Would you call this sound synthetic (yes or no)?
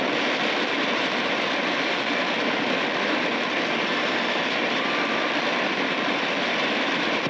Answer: yes